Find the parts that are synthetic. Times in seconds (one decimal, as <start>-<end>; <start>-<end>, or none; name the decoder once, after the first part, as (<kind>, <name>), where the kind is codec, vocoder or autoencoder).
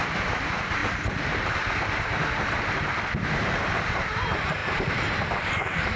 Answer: 0.0-0.8 (vocoder, BigVGAN v2); 1.5-6.0